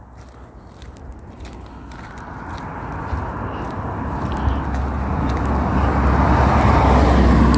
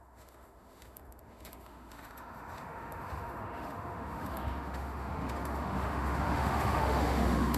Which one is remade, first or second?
second